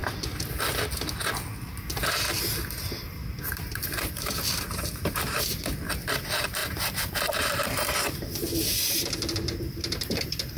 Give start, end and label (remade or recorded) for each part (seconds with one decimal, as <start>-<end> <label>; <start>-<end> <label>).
0.0-3.5 recorded; 3.5-10.6 remade